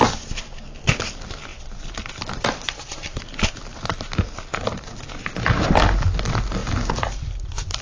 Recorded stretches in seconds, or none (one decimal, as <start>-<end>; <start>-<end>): 0.0-1.5; 3.5-6.6